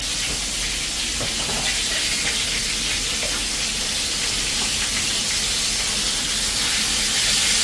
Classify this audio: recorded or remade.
recorded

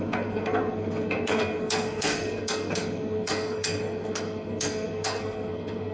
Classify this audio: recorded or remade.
remade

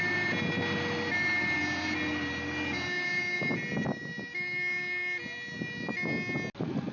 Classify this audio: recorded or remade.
recorded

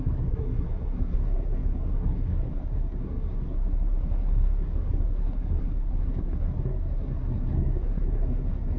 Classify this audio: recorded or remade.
remade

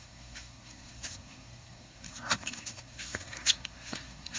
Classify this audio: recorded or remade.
remade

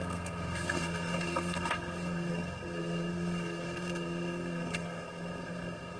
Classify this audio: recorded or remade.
remade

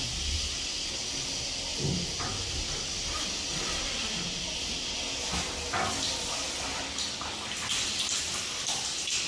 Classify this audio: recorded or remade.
recorded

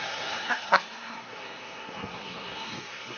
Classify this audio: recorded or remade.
remade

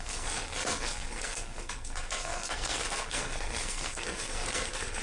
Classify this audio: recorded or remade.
remade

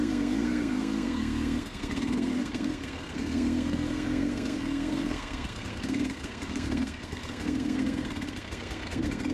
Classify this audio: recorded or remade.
remade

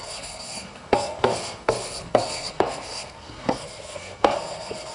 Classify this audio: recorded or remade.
remade